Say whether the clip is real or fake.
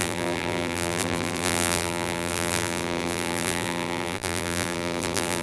fake